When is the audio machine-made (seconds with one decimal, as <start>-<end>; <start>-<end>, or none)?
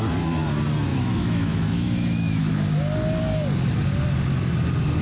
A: 0.9-2.5